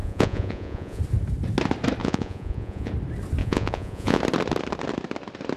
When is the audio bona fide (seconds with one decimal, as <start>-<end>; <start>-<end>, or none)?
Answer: 1.0-2.0; 2.9-3.4; 4.2-5.6